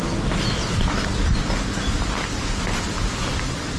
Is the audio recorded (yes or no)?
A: yes